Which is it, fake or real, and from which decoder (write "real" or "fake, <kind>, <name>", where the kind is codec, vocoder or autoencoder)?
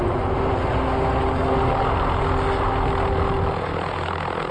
real